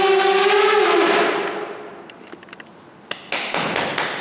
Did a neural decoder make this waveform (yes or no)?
no